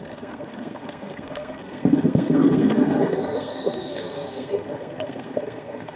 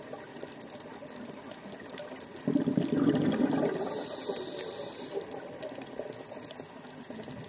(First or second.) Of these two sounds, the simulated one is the first